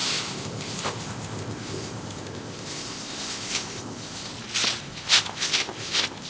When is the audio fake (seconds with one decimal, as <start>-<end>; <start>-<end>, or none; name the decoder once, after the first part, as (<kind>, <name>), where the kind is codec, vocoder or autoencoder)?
0.0-4.3 (codec, ZipCodec); 4.8-6.3